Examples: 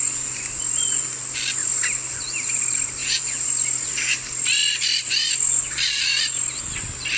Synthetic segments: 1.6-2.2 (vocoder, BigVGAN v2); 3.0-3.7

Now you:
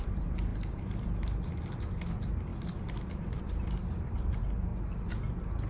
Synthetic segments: 0.0-4.7 (vocoder, BigVGAN v2)

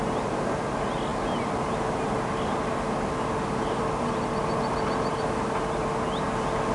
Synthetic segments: none

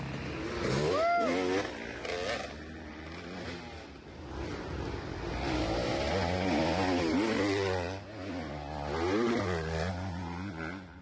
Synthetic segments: none

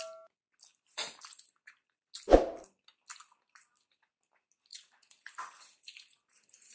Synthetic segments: 0.7-2.1 (vocoder, BigVGAN v2); 4.7-6.7

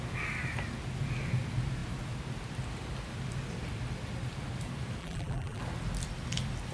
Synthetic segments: 5.0-5.6 (vocoder, BigVGAN v2)

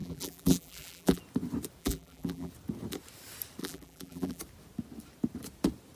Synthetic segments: 0.0-1.2 (vocoder, BigVGAN v2); 1.8-2.5; 3.6-4.4

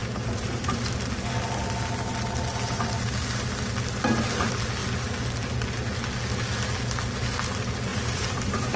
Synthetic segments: 0.0-0.9 (vocoder, BigVGAN v2); 7.9-8.8